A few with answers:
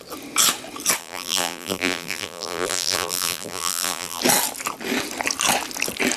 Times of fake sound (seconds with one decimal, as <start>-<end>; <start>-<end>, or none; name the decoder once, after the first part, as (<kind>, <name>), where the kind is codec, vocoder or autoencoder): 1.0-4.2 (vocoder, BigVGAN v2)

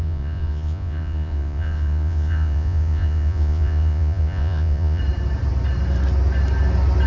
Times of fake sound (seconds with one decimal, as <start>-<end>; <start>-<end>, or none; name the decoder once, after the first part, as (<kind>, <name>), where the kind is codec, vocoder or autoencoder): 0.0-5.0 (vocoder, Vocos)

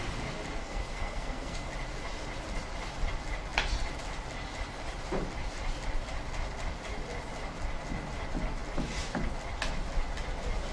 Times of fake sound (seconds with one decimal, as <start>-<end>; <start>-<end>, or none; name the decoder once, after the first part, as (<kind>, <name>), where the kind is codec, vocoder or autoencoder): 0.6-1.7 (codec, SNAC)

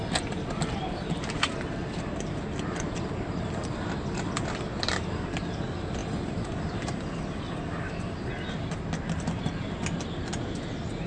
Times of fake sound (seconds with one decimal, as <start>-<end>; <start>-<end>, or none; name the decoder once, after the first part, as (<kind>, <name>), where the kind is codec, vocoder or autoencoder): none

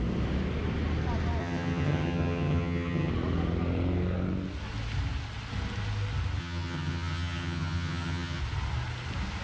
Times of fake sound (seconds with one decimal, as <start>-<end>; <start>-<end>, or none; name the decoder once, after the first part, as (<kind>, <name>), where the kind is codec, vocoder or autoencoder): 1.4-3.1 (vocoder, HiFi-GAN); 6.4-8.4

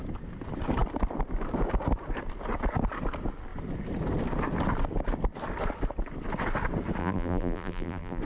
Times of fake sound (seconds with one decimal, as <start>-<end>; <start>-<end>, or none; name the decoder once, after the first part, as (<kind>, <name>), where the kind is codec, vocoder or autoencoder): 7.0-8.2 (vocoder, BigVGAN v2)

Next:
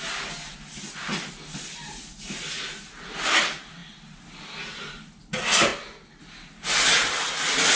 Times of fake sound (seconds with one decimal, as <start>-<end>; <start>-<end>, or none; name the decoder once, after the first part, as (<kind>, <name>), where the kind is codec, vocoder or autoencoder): none

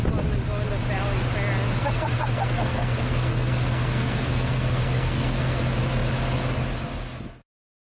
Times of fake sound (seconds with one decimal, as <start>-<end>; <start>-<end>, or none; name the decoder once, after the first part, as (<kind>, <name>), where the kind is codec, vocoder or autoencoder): 1.8-5.6 (codec, SNAC)